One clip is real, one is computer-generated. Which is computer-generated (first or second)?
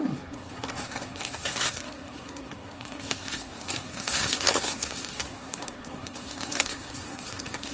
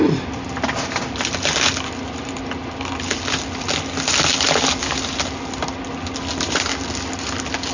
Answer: first